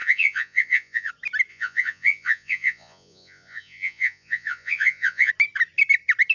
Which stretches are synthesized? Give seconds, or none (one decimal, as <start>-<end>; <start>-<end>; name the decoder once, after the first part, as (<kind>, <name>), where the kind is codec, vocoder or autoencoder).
0.0-1.1 (vocoder, Vocos); 1.5-5.3